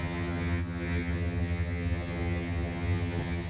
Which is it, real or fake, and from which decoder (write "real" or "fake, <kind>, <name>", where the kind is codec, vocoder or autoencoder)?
fake, vocoder, HiFi-GAN